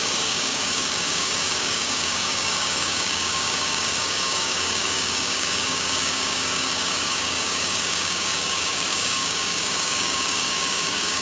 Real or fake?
fake